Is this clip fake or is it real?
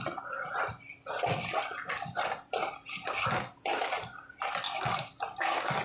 real